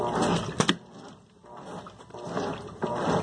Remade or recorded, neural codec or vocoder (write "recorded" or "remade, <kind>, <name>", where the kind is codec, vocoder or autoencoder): recorded